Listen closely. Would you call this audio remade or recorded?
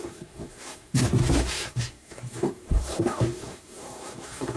remade